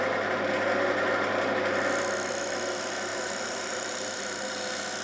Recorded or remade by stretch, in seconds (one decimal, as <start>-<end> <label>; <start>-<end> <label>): 0.0-3.1 recorded; 3.1-4.5 remade; 4.5-5.0 recorded